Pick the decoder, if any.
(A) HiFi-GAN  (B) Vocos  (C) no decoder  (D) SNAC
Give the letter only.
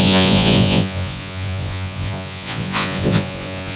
B